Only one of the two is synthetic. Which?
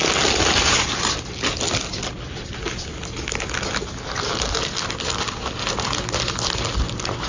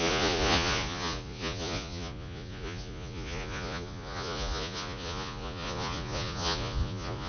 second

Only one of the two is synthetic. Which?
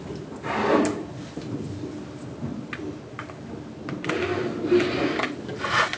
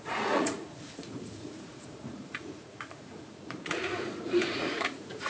second